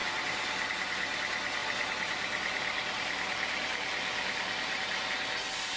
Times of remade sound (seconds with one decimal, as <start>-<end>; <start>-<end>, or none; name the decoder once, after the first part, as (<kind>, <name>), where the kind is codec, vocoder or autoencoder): 0.0-0.7 (vocoder, BigVGAN v2); 1.6-5.1